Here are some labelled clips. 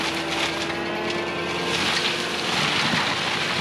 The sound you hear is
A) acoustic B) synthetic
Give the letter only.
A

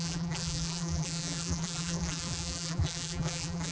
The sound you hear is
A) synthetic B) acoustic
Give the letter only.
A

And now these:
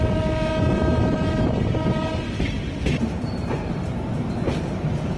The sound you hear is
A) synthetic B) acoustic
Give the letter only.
A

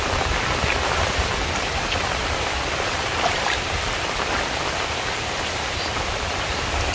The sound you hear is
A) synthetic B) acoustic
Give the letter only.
A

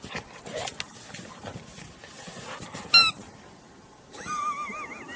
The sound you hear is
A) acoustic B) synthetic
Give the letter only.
A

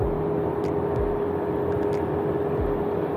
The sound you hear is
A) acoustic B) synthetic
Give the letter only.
A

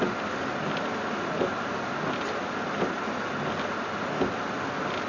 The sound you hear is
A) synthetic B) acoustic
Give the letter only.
B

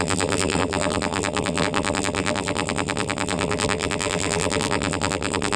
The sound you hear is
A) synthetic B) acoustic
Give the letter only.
A